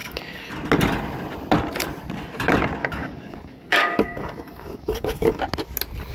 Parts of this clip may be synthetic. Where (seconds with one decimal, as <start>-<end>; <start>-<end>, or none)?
0.0-0.5; 2.8-5.4

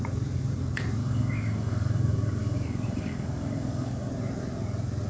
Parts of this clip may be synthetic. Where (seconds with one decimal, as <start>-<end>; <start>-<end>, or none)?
1.0-4.1

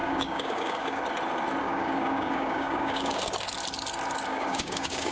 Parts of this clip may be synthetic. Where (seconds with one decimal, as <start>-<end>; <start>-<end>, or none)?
0.0-1.0; 1.6-3.2; 4.3-5.1

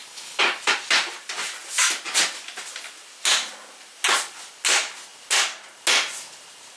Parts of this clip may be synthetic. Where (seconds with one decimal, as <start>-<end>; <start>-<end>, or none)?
0.0-0.6